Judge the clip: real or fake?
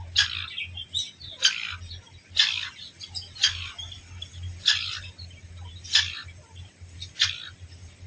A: real